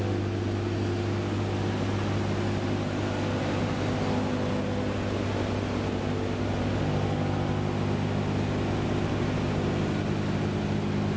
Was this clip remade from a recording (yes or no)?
no